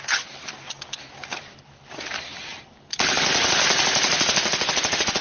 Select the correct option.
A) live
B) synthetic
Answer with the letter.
B